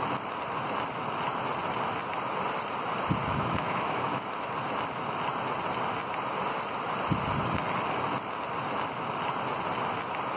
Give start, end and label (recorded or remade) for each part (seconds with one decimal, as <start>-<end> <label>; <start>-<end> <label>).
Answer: 0.0-3.2 recorded; 3.2-4.5 remade; 4.5-10.4 recorded

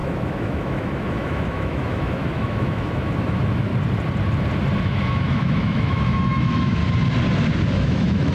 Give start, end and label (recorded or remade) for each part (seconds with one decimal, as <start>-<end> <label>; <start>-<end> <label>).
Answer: 0.0-3.7 remade; 3.7-4.8 recorded; 4.8-6.8 remade; 6.8-7.7 recorded; 7.7-8.3 remade

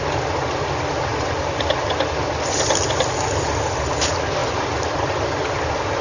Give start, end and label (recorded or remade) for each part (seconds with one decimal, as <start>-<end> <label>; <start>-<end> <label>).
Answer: 0.0-6.0 recorded

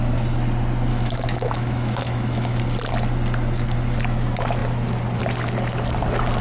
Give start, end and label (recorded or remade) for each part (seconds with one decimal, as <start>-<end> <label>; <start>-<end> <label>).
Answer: 0.0-0.9 recorded; 0.9-2.6 remade; 2.6-6.4 recorded

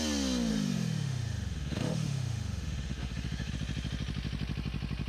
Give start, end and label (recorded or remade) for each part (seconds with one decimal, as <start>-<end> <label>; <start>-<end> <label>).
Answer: 0.0-0.5 recorded; 0.5-3.5 remade; 3.5-5.1 recorded

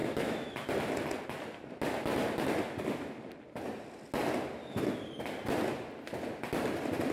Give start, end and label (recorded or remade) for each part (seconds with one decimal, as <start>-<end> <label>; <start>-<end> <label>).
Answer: 0.0-0.7 remade; 0.7-7.1 recorded

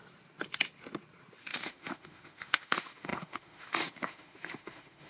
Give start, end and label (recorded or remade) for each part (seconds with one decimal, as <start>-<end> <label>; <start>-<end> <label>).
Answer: 0.0-1.4 recorded; 1.4-5.1 remade